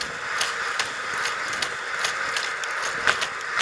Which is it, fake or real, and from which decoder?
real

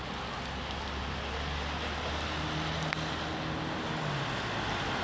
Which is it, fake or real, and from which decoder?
real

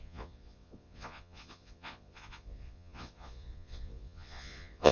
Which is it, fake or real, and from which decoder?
fake, vocoder, Vocos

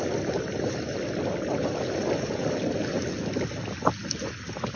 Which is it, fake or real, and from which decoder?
real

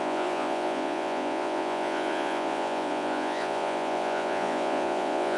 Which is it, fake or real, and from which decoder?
fake, vocoder, Vocos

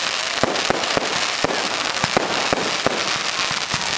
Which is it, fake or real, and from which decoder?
real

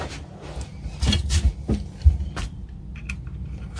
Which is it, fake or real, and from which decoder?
real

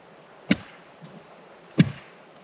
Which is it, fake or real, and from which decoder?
real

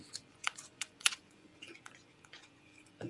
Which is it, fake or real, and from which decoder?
fake, vocoder, Vocos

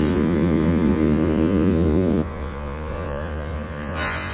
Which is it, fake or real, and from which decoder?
fake, vocoder, Vocos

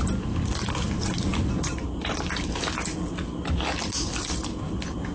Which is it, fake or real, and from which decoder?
real